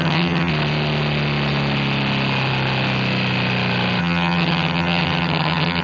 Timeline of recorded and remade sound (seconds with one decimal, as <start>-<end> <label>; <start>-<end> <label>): 0.0-0.5 remade; 0.5-4.0 recorded; 4.0-5.8 remade